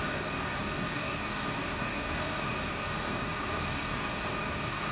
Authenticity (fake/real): fake